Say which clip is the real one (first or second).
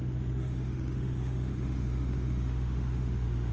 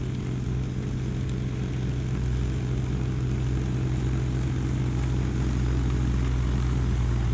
second